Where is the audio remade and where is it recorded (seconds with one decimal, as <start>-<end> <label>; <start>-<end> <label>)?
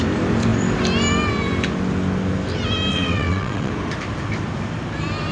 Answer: 0.0-2.9 recorded; 2.9-3.7 remade; 3.7-5.3 recorded